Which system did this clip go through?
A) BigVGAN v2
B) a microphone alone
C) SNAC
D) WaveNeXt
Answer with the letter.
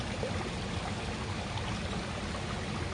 B